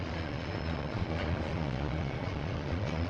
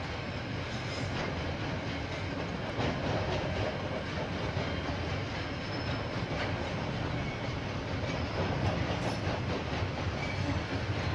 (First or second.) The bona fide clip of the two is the second